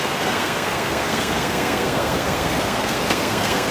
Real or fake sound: fake